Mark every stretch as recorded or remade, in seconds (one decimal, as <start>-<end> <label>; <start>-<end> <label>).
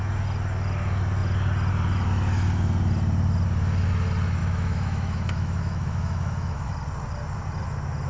0.0-4.4 recorded; 4.4-6.7 remade; 6.7-8.1 recorded